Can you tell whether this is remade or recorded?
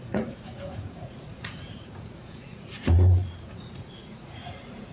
remade